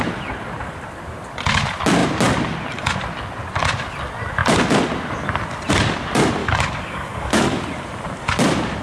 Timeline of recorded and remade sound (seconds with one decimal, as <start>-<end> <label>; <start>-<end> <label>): 0.0-6.4 recorded; 6.4-7.6 remade; 7.6-8.8 recorded